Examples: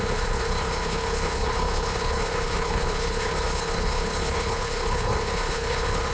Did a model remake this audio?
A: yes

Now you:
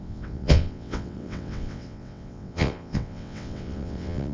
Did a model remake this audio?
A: yes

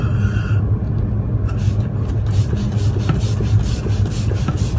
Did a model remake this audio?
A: no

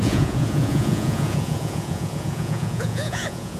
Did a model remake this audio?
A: yes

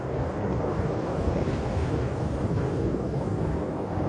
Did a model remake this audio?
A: yes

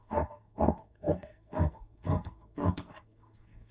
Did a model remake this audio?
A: yes